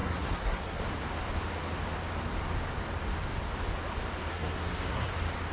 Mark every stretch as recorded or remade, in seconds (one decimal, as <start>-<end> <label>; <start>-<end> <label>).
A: 0.0-0.8 remade; 0.8-4.3 recorded; 4.3-5.1 remade; 5.1-5.5 recorded